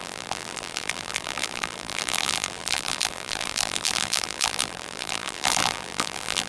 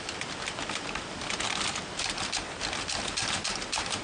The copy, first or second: first